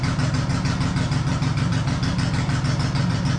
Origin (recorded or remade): recorded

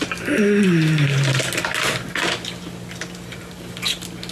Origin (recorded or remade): recorded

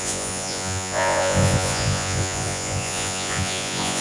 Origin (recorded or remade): remade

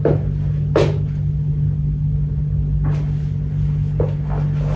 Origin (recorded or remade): recorded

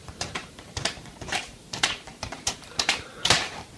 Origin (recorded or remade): remade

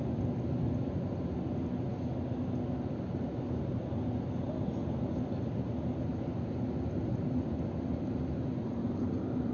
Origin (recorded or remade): recorded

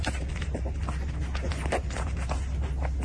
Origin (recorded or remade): recorded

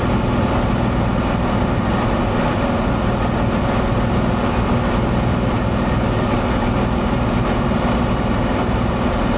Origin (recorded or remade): recorded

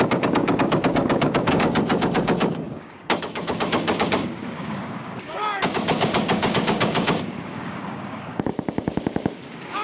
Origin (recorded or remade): remade